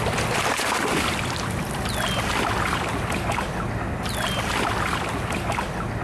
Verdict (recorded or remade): recorded